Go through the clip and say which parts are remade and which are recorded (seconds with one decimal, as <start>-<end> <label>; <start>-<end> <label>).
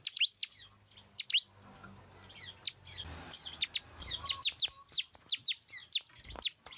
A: 0.0-6.8 recorded